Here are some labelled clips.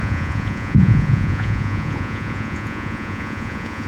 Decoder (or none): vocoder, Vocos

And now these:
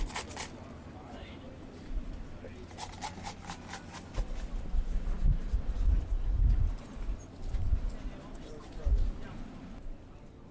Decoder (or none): none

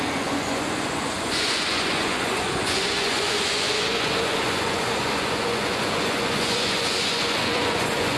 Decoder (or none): vocoder, Vocos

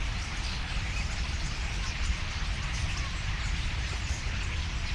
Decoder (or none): none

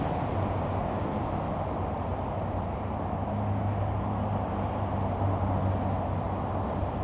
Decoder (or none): none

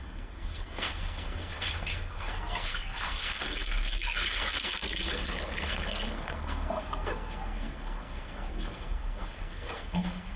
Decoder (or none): codec, SNAC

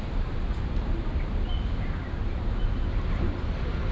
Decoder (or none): none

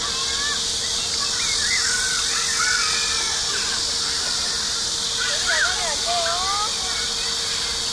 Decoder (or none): none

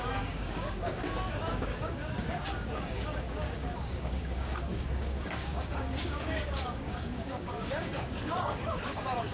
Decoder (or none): codec, DAC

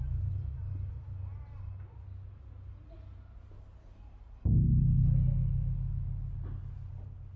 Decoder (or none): none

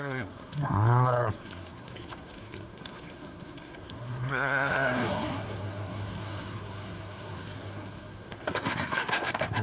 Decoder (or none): codec, SNAC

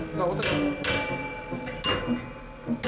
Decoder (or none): none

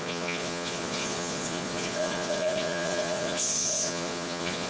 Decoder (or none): vocoder, Vocos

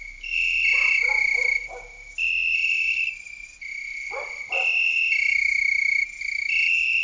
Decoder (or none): none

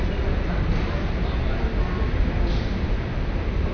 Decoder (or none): none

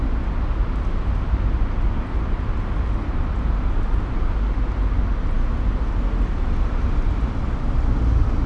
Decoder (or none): none